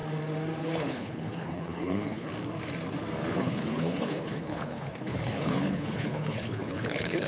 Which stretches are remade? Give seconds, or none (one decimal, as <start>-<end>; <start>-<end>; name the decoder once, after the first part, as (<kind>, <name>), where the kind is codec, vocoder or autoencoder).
0.6-2.3 (codec, HILCodec); 3.3-7.3